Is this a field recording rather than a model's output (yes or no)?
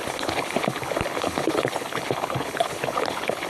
no